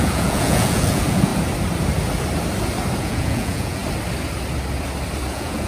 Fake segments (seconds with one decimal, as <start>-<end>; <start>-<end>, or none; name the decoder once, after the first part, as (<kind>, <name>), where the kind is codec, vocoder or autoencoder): 0.0-1.3 (vocoder, Vocos); 3.0-3.8; 5.3-5.7